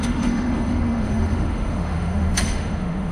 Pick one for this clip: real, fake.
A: fake